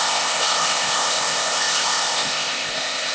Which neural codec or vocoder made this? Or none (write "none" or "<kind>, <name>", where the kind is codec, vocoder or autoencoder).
codec, ZipCodec